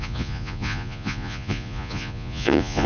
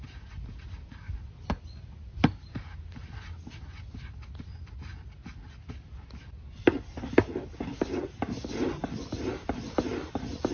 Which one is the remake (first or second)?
first